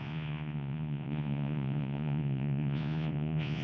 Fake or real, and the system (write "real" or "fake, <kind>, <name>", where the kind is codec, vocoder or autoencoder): fake, vocoder, Vocos